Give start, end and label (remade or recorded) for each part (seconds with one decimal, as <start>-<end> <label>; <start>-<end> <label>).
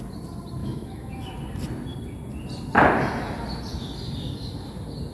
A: 0.0-0.6 recorded; 0.6-1.1 remade; 1.1-5.1 recorded